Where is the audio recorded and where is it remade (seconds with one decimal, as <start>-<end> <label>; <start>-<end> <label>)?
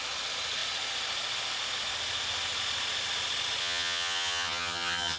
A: 0.0-3.6 recorded; 3.6-5.2 remade